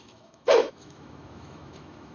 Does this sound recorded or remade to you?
remade